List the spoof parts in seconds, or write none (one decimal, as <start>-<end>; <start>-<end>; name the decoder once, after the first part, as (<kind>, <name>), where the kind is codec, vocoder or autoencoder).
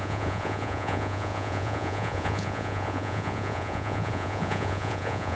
0.0-5.4 (vocoder, Vocos)